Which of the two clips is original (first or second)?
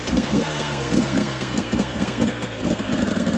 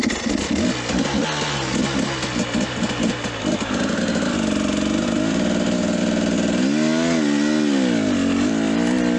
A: second